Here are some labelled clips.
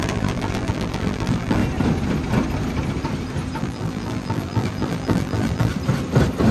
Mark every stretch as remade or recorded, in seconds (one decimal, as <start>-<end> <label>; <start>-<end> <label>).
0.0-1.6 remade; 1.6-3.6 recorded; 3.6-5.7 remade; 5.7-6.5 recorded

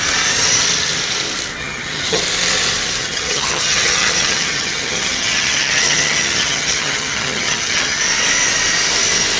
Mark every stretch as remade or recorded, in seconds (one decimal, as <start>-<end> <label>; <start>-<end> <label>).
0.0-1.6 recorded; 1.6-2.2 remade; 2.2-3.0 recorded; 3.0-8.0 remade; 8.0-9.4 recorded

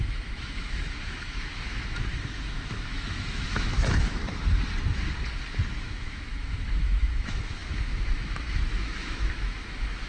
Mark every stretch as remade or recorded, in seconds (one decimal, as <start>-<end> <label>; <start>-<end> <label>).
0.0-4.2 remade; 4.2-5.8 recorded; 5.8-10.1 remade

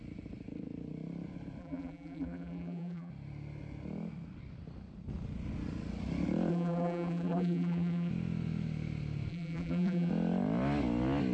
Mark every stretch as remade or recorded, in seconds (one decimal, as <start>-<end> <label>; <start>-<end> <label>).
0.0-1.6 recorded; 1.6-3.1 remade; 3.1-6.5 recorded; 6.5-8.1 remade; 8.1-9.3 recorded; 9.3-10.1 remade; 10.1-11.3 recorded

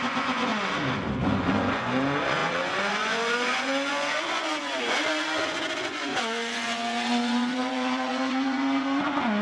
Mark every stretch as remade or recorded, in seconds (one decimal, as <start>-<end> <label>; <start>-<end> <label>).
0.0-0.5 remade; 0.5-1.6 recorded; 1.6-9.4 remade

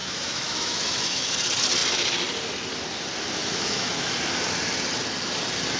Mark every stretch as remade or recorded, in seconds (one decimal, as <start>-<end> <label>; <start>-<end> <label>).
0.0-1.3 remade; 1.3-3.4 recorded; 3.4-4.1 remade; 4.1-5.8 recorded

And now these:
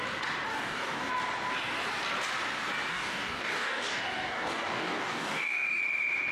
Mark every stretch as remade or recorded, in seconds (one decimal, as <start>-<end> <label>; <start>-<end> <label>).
0.0-0.5 recorded; 0.5-1.1 remade; 1.1-2.9 recorded; 2.9-5.8 remade; 5.8-6.3 recorded